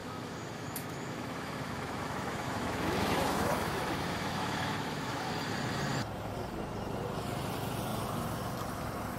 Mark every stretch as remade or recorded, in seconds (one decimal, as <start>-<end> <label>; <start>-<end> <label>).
0.0-5.3 remade; 5.3-9.2 recorded